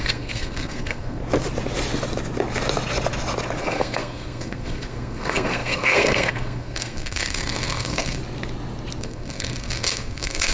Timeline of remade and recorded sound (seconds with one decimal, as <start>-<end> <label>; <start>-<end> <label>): 0.0-1.2 remade; 1.2-3.6 recorded; 3.6-8.2 remade; 8.2-9.0 recorded; 9.0-10.5 remade